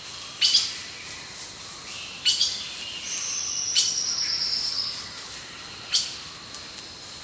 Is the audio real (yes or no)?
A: yes